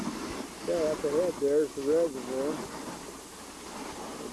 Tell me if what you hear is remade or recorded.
recorded